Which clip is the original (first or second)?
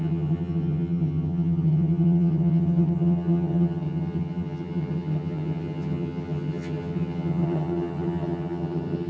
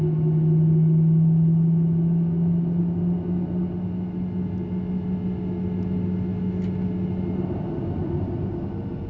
second